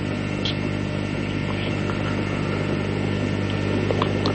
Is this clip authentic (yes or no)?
yes